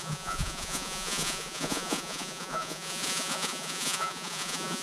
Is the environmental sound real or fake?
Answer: fake